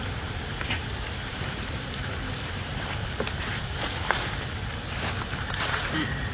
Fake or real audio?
fake